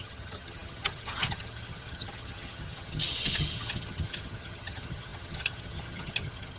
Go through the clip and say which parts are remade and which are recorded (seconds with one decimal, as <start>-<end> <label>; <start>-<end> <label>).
0.0-6.6 remade